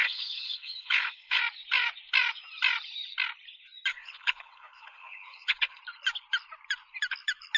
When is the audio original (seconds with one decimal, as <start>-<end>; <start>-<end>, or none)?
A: 1.4-3.9; 5.8-7.6